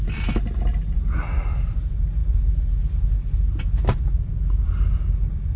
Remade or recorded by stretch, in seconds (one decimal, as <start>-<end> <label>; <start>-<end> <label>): 0.0-5.6 recorded